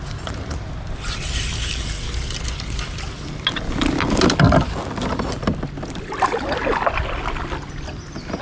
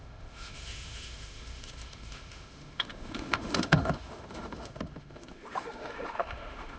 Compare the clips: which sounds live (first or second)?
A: first